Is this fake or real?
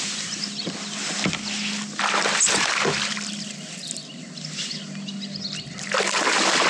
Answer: real